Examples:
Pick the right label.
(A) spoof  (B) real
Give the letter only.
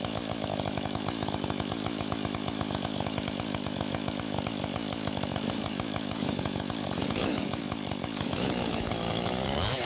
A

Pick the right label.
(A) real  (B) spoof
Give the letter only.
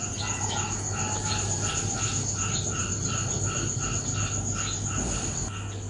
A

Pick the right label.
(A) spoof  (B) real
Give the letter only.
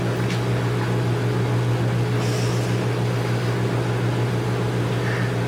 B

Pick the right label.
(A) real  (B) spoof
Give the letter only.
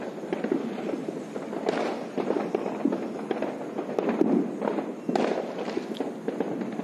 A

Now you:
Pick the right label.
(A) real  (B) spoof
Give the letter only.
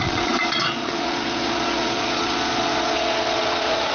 B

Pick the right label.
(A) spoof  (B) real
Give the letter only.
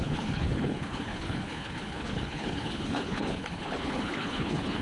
A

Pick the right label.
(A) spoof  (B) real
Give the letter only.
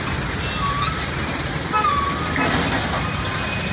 B